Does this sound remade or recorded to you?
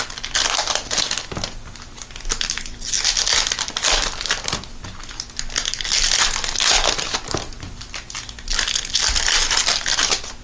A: recorded